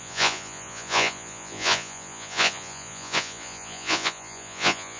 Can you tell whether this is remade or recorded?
remade